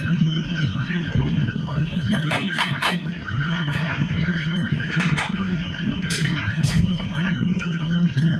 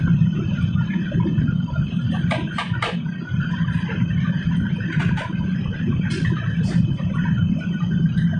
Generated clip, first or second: first